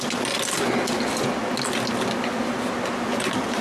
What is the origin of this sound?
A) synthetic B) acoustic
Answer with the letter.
B